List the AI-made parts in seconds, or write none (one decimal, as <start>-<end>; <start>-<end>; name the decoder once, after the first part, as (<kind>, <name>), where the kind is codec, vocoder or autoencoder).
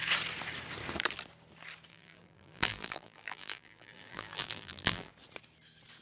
1.9-5.1 (vocoder, BigVGAN v2)